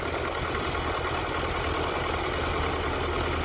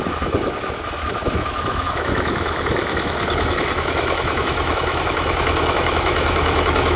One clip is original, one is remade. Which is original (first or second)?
first